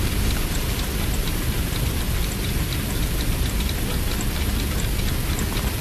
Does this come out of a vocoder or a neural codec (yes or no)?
no